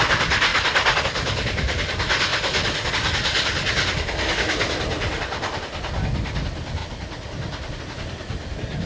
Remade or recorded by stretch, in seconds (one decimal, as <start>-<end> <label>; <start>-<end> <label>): 0.0-2.3 recorded; 2.3-2.9 remade; 2.9-6.8 recorded; 6.8-7.8 remade; 7.8-8.9 recorded